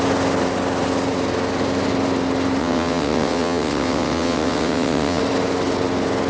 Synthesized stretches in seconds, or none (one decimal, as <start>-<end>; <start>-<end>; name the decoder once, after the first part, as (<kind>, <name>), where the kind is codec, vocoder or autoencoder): 2.6-5.2 (vocoder, WaveNeXt)